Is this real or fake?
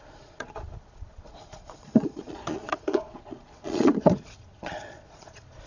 fake